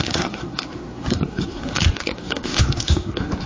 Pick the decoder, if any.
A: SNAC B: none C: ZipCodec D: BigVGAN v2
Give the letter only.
A